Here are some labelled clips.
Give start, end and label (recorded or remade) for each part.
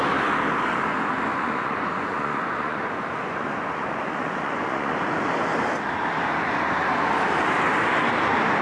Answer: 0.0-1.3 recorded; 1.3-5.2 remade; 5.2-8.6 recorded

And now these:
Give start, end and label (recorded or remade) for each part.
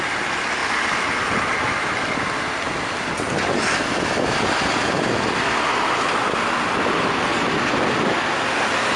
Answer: 0.0-9.0 recorded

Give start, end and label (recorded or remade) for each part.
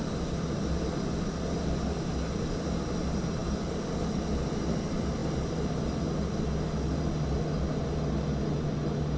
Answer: 0.0-9.2 recorded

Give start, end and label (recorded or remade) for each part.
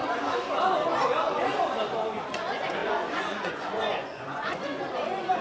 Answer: 0.0-2.3 recorded; 2.3-5.4 remade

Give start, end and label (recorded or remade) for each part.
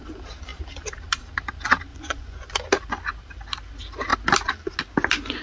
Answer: 0.0-1.9 recorded; 1.9-2.5 remade; 2.5-5.4 recorded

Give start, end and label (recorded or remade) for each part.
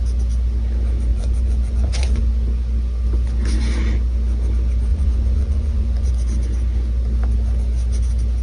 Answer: 0.0-1.1 recorded; 1.1-2.2 remade; 2.2-4.9 recorded; 4.9-6.1 remade; 6.1-8.4 recorded